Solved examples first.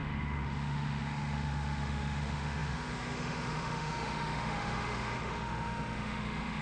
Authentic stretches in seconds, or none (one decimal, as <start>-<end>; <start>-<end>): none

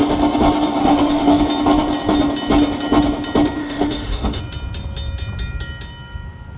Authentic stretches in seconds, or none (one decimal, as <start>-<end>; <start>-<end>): 0.0-0.8; 1.4-3.6; 4.4-6.6

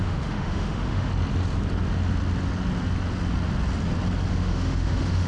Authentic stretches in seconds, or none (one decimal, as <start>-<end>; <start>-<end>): 1.1-4.3

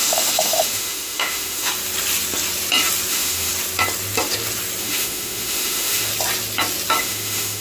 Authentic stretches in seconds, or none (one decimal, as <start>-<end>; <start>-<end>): 1.7-3.1; 3.5-4.8; 6.1-7.0

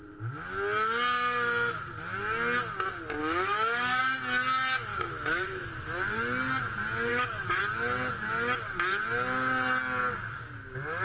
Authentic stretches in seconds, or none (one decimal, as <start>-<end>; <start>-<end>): 0.0-3.2; 4.0-4.9; 5.7-7.1; 7.6-11.0